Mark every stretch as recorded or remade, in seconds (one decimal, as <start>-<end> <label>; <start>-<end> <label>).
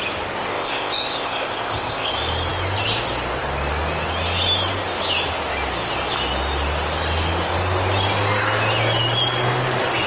0.0-0.5 recorded; 0.5-2.1 remade; 2.1-10.1 recorded